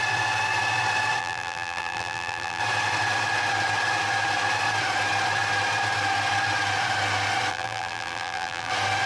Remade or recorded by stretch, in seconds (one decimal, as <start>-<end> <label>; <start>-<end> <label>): 0.0-1.2 recorded; 1.2-2.6 remade; 2.6-7.5 recorded; 7.5-8.7 remade; 8.7-9.1 recorded